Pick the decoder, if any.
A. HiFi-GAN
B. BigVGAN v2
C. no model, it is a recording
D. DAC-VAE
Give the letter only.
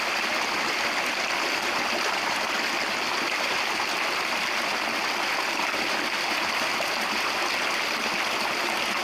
C